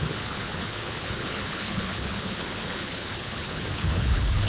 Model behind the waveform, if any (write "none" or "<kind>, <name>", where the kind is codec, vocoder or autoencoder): codec, HILCodec